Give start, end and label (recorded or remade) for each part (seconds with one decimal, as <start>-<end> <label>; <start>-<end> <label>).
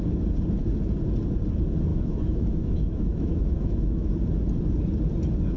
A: 0.0-1.9 recorded; 1.9-4.1 remade; 4.1-5.6 recorded